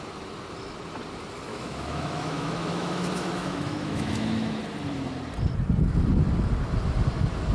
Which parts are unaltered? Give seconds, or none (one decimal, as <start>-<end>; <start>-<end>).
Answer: 0.0-1.5; 4.6-7.5

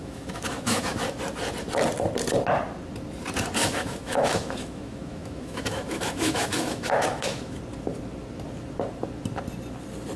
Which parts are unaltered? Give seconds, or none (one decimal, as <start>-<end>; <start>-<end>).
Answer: 1.0-3.6; 7.6-10.2

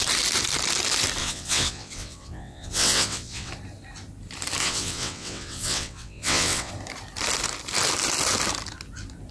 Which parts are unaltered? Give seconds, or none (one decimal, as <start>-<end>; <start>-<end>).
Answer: 0.0-1.2; 3.5-4.6; 6.7-9.3

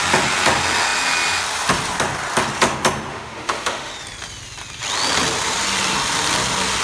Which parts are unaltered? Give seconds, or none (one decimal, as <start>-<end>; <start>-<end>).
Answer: 0.0-3.1; 3.9-6.8